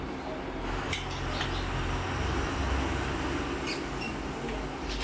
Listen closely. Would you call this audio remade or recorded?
recorded